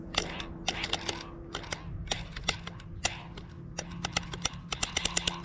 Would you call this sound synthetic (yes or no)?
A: no